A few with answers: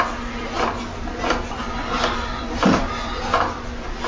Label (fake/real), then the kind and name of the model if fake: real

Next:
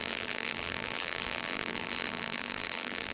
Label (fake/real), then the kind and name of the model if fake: fake, vocoder, BigVGAN v2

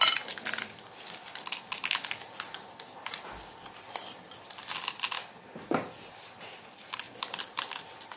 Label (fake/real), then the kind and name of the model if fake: real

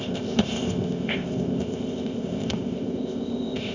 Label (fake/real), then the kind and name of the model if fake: fake, codec, ZipCodec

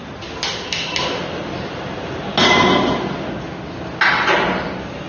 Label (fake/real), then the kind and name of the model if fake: real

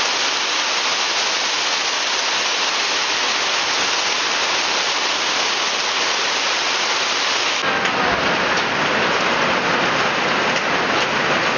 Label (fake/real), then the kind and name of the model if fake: real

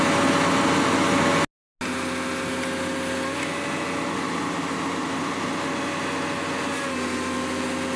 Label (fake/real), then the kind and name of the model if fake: real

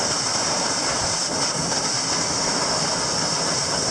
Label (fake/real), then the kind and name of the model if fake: real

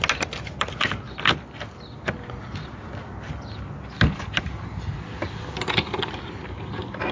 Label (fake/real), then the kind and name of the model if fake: real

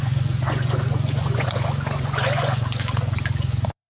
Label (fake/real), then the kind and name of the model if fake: fake, vocoder, Vocos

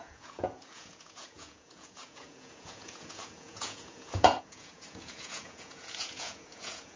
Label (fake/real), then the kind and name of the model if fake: fake, vocoder, Vocos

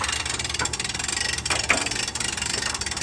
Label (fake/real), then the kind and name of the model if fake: real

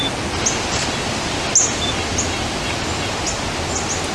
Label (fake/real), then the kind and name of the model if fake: real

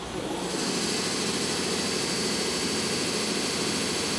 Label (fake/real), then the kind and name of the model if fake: real